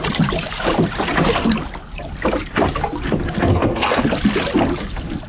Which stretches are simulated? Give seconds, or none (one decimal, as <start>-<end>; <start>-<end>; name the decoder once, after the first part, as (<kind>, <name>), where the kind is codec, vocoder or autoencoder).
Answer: 3.5-4.0 (codec, SNAC)